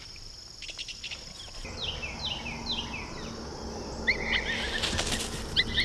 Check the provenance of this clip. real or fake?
real